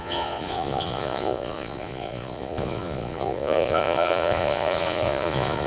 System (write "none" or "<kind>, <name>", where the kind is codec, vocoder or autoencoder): vocoder, Vocos